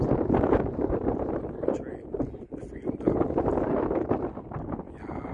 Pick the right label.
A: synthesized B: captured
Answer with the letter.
B